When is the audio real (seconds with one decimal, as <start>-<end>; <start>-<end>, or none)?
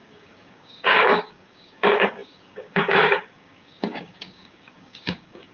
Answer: none